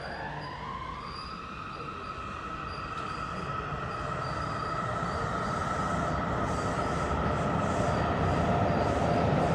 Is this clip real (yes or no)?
yes